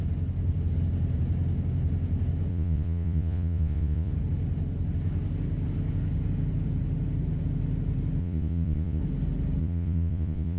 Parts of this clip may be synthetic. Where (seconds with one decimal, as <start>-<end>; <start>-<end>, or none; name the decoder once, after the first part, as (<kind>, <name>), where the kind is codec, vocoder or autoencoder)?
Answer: 2.5-4.1 (vocoder, Vocos); 8.2-9.0; 9.6-10.6